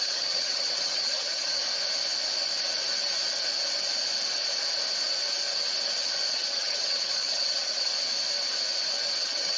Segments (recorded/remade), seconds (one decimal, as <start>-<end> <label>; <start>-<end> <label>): 0.0-1.6 remade; 1.6-6.3 recorded; 6.3-7.9 remade; 7.9-9.2 recorded; 9.2-9.6 remade